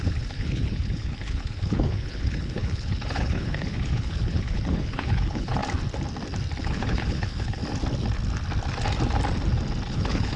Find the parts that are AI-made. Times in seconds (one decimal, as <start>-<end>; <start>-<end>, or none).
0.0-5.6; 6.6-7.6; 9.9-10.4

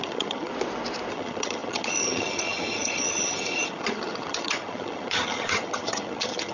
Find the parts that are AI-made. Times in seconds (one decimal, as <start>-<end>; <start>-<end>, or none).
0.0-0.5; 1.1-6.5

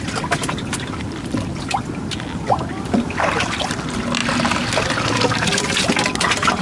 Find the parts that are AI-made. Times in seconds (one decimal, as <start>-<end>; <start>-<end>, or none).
none

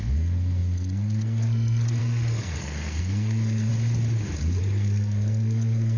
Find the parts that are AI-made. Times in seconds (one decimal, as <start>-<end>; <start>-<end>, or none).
0.0-3.7; 4.6-6.0

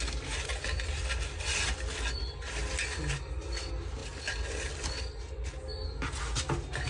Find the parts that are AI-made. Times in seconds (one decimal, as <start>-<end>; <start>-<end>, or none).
none

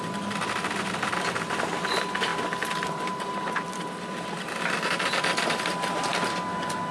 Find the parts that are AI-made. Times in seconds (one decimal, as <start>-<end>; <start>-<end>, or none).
2.3-4.6

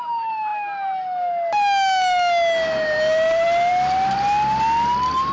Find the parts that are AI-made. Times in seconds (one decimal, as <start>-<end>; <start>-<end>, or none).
none